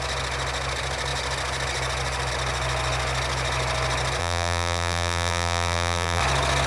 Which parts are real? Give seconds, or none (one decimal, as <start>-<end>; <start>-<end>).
0.0-4.2; 6.2-6.7